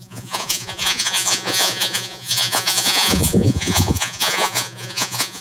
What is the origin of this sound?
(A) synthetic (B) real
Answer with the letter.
A